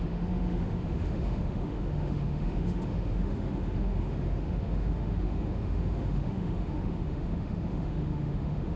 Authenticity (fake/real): fake